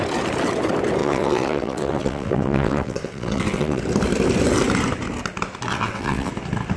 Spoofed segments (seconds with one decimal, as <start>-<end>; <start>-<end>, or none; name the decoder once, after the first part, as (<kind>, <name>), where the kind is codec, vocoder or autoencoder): 1.0-3.8 (vocoder, WaveNeXt); 5.7-6.3